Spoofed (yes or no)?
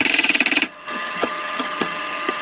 yes